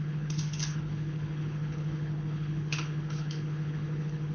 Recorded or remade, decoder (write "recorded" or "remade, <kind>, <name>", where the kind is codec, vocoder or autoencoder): remade, codec, HILCodec